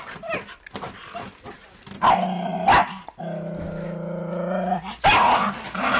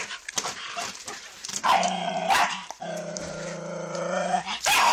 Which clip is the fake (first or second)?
second